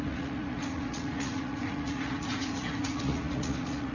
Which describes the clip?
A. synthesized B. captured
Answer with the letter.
A